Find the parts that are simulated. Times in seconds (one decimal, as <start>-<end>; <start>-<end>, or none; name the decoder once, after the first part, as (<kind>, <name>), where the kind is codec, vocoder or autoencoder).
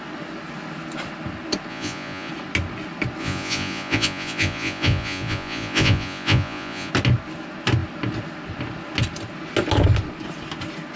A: 1.7-2.3 (vocoder, Vocos); 3.2-6.9